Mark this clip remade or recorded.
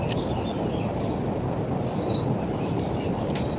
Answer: recorded